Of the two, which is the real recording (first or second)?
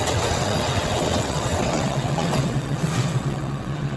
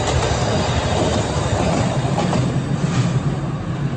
second